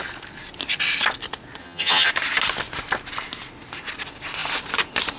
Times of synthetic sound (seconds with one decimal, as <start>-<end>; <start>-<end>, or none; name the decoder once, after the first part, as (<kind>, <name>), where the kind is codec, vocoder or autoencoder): 1.6-2.1 (vocoder, HiFi-GAN)